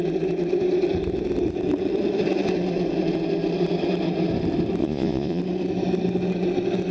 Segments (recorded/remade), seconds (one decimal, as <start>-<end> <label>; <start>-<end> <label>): 0.0-4.8 recorded; 4.8-5.4 remade; 5.4-6.9 recorded

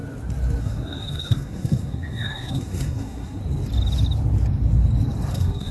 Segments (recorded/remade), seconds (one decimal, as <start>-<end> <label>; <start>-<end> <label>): 0.0-0.6 recorded; 0.6-3.4 remade; 3.4-5.3 recorded; 5.3-5.7 remade

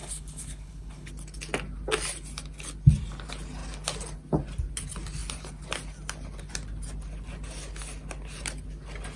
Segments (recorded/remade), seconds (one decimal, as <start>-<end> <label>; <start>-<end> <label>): 0.0-1.1 remade; 1.1-9.2 recorded

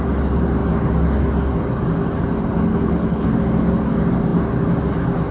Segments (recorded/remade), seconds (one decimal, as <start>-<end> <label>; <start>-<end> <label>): 0.0-2.7 recorded; 2.7-3.3 remade; 3.3-5.3 recorded

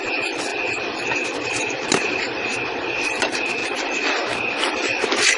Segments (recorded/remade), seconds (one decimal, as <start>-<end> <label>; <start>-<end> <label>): 0.0-0.5 remade; 0.5-1.3 recorded; 1.3-5.4 remade